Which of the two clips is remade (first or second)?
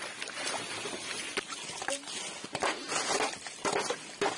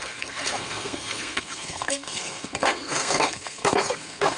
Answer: second